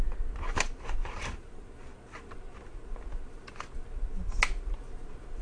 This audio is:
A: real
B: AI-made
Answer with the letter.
A